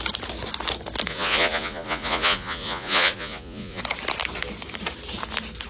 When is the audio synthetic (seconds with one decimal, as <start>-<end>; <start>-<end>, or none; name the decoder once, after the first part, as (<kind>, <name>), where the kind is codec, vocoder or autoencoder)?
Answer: 1.1-3.8 (vocoder, Vocos)